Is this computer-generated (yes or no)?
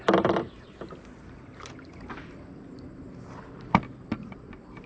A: no